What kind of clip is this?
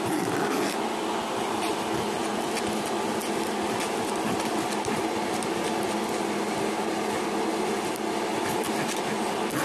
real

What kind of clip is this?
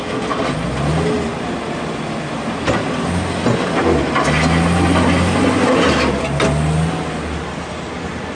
real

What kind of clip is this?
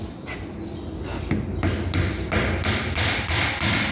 real